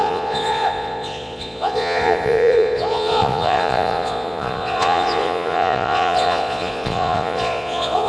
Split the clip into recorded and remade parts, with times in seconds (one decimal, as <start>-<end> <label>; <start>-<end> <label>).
0.0-8.1 remade